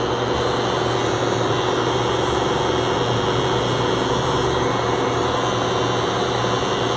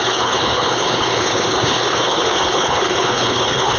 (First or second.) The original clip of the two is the first